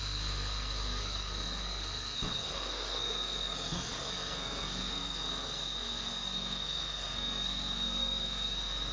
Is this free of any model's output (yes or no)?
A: no